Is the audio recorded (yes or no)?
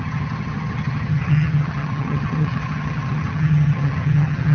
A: no